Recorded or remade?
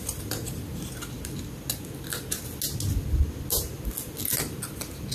recorded